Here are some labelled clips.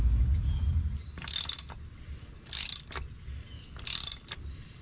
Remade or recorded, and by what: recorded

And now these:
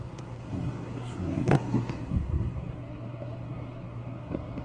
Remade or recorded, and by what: remade, codec, SNAC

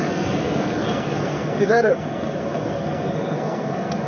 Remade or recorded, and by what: remade, codec, SNAC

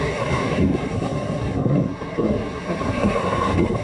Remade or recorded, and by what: remade, codec, SNAC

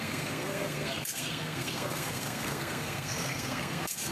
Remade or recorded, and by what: remade, codec, SNAC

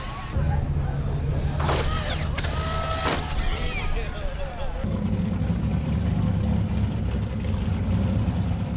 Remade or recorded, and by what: recorded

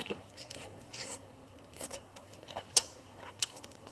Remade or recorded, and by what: remade, codec, SNAC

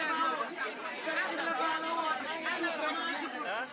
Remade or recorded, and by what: recorded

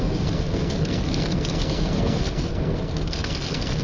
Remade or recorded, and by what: remade, codec, SNAC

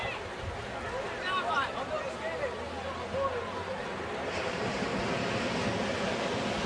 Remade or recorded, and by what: recorded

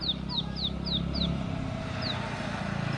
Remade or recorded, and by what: recorded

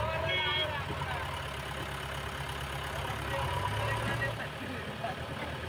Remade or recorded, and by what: recorded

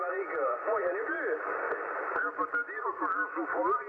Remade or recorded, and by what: recorded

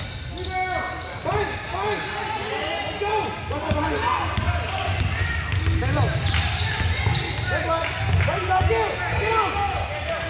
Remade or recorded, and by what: recorded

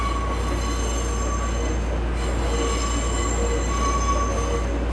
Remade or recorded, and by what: recorded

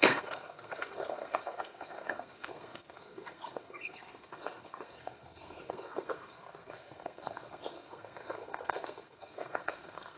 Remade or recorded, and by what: remade, codec, SNAC